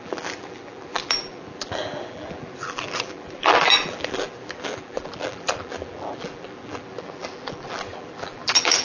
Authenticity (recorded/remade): remade